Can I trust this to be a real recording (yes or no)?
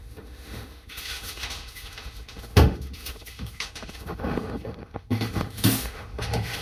no